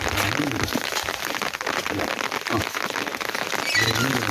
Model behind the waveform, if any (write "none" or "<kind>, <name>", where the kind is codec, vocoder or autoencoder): none